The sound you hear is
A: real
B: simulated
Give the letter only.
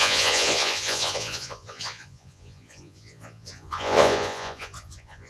B